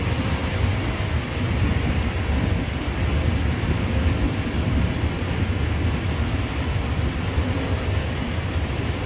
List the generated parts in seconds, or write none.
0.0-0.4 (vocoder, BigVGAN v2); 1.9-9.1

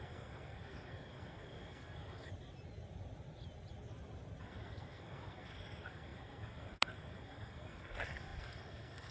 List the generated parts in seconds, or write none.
0.0-2.3 (codec, SNAC); 4.4-9.1